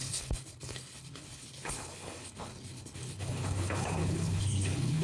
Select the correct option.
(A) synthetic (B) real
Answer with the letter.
A